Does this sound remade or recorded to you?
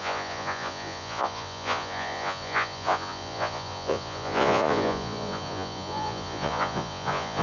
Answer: remade